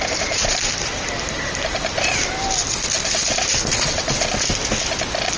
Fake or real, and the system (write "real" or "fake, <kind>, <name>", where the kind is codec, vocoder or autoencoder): real